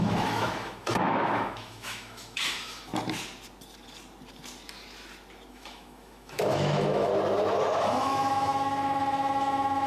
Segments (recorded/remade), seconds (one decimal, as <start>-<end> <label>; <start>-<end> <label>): 0.0-2.9 remade; 2.9-5.5 recorded; 5.5-7.1 remade; 7.1-7.8 recorded; 7.8-9.9 remade